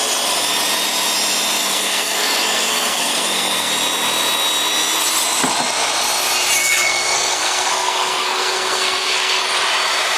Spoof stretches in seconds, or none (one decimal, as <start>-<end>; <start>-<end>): 1.6-3.7; 6.6-9.4